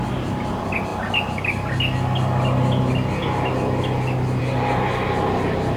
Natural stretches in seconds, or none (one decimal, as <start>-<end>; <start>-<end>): 0.0-5.8